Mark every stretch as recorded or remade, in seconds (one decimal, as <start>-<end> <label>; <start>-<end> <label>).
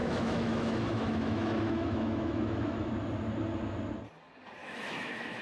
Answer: 0.0-2.9 remade; 2.9-4.6 recorded; 4.6-5.4 remade